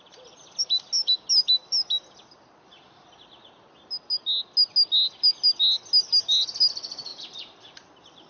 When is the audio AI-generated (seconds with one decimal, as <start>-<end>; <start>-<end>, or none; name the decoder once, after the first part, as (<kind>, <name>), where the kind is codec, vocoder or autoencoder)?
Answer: none